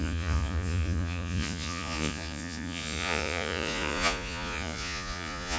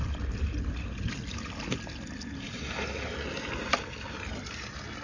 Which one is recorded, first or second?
second